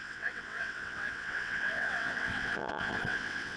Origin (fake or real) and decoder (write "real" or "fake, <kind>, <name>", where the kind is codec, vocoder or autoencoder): fake, vocoder, WaveNeXt